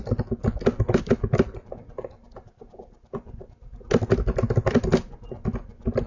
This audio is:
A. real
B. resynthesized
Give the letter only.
A